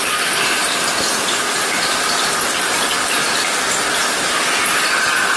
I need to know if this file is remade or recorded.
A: recorded